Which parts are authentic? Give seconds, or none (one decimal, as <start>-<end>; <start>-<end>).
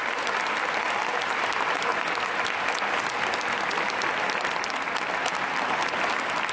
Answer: none